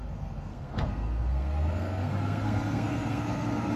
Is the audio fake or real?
fake